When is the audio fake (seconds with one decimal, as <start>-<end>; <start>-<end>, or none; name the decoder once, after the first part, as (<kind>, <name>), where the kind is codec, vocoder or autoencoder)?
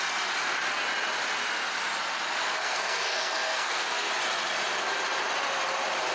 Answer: 2.6-4.1 (codec, SNAC)